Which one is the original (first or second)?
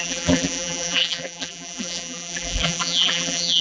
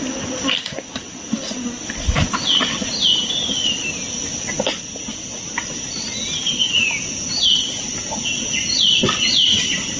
second